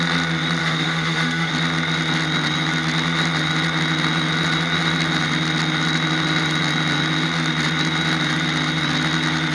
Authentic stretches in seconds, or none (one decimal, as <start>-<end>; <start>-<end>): 0.0-0.6; 1.5-9.5